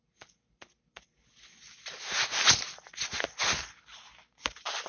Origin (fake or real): real